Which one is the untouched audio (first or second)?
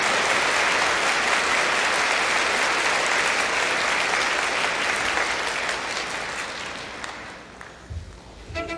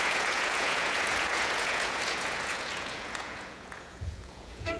first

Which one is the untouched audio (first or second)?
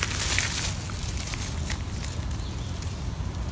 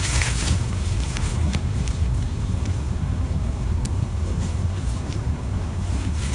first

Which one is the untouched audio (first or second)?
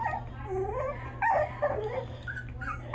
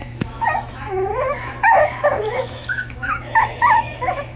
first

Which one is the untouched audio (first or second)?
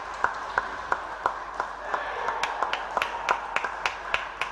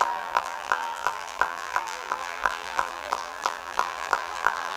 first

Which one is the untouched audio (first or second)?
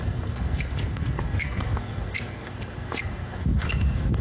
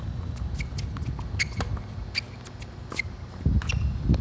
second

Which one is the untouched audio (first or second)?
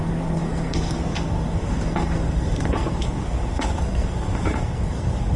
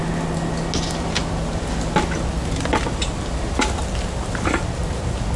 second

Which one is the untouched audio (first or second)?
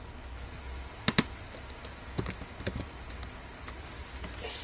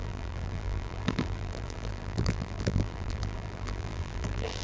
first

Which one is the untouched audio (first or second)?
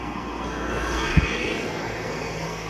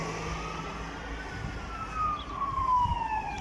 second